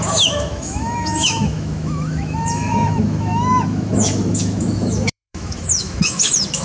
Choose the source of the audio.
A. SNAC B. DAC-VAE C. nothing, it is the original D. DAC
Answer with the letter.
B